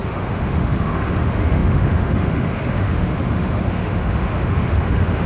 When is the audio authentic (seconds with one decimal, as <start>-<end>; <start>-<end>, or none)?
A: none